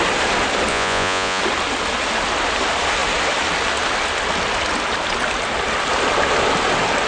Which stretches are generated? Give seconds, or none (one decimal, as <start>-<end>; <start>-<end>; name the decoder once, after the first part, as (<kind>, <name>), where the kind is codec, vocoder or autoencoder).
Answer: 0.7-1.4 (vocoder, Vocos)